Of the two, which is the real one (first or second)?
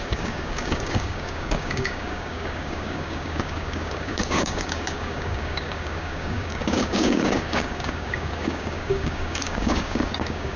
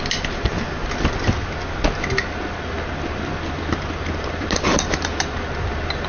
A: second